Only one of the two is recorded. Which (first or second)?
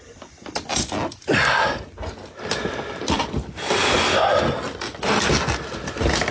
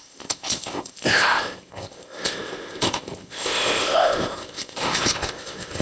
first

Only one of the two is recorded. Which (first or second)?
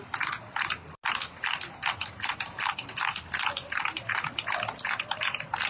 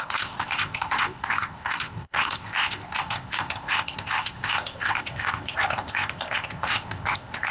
first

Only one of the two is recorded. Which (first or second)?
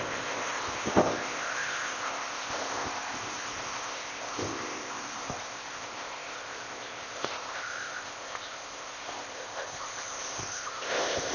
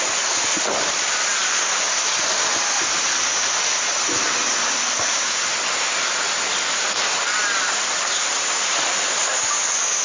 second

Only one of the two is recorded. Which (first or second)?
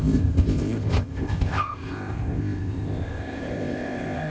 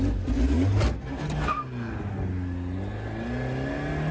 second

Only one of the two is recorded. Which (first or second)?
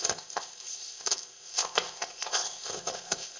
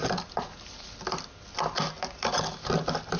second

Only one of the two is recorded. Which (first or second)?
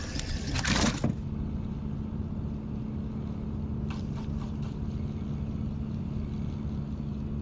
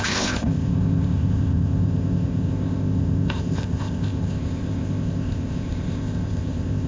first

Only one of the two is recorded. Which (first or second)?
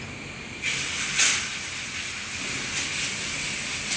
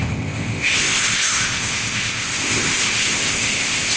first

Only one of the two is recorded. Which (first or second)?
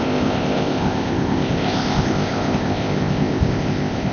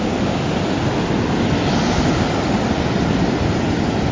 second